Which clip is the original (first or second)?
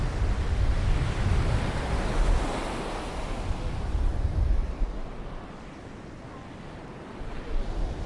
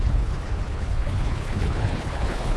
first